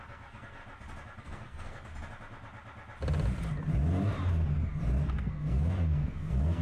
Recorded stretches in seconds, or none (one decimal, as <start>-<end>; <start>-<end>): 0.6-1.2; 1.9-5.1